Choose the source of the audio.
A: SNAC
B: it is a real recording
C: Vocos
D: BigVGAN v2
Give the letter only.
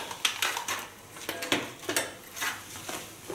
B